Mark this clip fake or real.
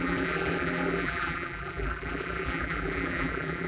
fake